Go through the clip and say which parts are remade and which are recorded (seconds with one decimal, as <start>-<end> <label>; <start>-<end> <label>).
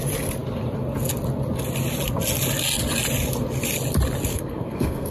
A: 0.0-4.3 recorded; 4.3-5.1 remade